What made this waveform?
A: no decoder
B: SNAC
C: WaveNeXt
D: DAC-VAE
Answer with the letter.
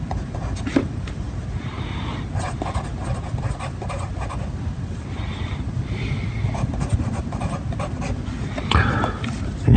A